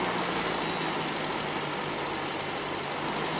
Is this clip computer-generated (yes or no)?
no